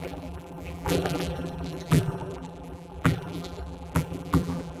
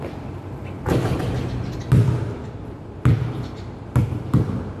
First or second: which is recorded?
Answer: second